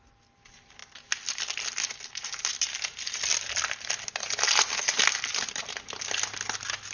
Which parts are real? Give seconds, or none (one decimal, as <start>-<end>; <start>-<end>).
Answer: 0.0-6.9